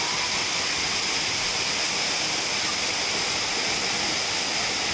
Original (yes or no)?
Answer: yes